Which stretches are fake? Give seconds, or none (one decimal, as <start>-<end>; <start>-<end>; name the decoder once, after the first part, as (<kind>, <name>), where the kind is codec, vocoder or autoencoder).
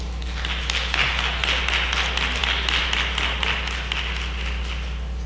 none